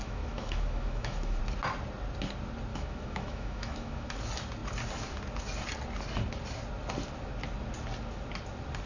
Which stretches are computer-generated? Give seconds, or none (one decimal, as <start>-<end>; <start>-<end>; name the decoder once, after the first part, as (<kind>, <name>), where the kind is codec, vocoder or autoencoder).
0.0-1.4 (autoencoder, DAC-VAE); 2.7-4.1